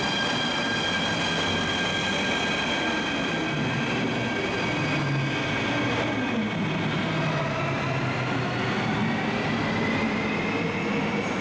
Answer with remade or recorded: recorded